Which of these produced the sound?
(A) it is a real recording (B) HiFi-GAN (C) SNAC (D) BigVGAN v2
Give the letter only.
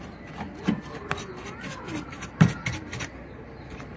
A